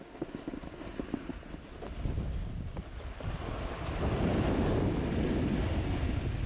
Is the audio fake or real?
real